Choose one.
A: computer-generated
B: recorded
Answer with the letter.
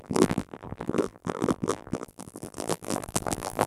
A